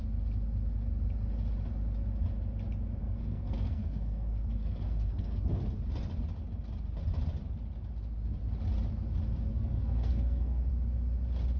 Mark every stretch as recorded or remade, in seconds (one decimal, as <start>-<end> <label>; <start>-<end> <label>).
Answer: 0.0-3.0 recorded; 3.0-5.5 remade; 5.5-9.5 recorded; 9.5-10.7 remade; 10.7-11.6 recorded